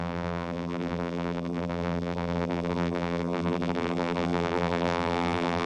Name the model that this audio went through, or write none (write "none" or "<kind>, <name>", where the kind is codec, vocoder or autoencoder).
vocoder, BigVGAN v2